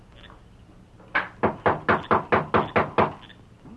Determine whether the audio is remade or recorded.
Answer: recorded